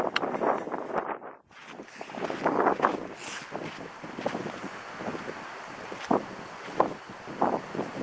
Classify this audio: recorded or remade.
recorded